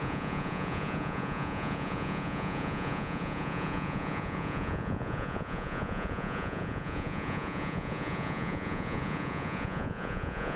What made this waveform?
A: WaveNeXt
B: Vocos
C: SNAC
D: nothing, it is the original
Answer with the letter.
B